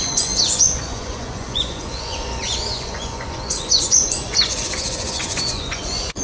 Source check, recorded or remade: remade